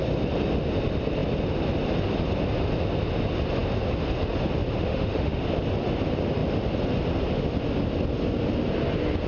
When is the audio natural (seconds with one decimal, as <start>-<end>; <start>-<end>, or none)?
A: 0.0-4.9; 5.4-9.3